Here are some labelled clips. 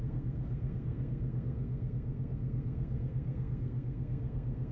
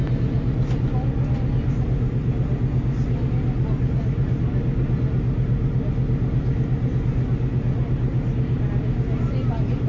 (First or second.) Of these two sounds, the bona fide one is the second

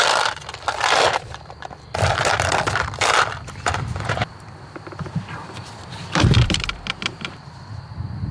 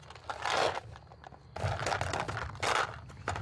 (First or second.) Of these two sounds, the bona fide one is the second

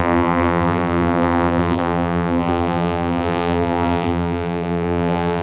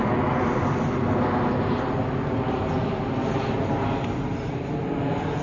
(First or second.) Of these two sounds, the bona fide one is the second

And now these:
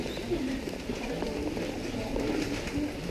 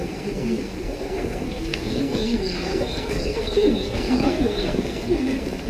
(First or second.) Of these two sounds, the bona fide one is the first